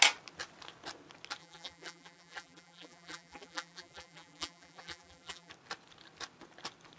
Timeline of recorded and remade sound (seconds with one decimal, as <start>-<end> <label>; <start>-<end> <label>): 0.0-1.4 recorded; 1.4-5.5 remade; 5.5-7.0 recorded